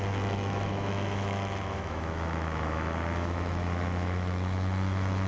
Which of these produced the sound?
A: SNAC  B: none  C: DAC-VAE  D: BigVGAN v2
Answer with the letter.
C